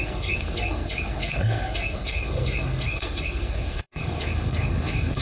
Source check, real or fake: fake